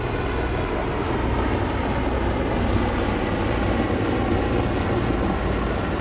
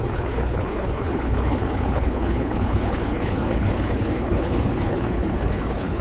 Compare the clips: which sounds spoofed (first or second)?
second